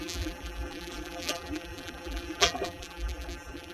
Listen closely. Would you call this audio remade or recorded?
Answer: remade